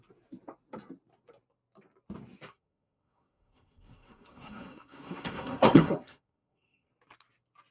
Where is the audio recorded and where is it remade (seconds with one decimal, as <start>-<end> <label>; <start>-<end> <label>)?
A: 0.0-2.5 recorded; 2.5-6.9 remade; 6.9-7.7 recorded